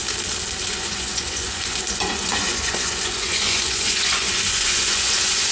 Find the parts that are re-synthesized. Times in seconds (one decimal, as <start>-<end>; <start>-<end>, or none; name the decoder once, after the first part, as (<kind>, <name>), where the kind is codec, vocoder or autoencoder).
0.6-5.5 (vocoder, Vocos)

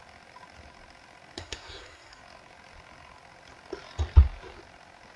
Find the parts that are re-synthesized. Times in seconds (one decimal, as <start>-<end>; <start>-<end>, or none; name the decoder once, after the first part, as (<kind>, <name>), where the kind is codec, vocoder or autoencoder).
1.4-2.2 (codec, SNAC)

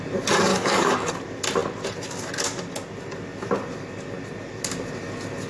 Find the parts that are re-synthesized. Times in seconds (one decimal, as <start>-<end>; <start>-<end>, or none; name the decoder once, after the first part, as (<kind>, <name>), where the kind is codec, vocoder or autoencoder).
0.5-1.1 (codec, DAC)

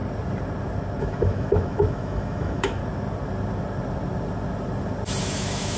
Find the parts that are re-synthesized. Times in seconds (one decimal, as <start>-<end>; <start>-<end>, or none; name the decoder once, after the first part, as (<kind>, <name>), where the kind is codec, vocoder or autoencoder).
1.0-2.8 (autoencoder, DAC-VAE); 5.2-5.8

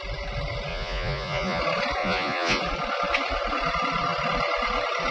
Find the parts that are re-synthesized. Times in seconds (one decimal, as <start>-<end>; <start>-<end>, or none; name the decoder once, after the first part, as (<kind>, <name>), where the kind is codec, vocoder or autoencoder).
0.7-1.6 (vocoder, Vocos); 2.0-2.6